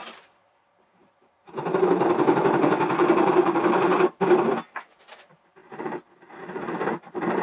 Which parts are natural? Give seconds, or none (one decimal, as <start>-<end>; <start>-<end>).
3.9-4.7